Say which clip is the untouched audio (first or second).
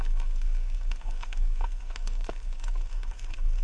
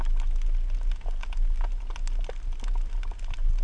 second